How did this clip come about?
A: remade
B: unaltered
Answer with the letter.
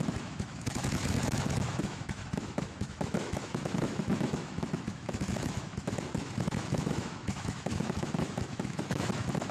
A